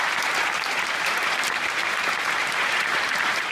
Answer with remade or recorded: remade